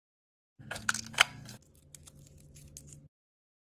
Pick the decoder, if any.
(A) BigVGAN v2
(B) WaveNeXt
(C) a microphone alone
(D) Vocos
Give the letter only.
C